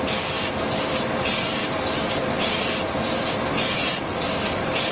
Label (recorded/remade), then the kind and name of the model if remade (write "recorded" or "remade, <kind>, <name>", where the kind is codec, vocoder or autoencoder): recorded